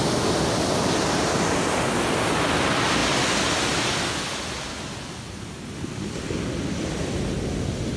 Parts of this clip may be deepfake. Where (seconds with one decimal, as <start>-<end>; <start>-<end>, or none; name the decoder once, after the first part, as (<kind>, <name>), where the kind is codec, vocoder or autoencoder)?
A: none